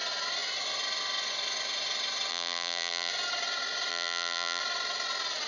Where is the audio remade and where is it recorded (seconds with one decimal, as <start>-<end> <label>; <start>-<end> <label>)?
0.0-2.3 recorded; 2.3-3.1 remade; 3.1-3.9 recorded; 3.9-4.6 remade; 4.6-5.5 recorded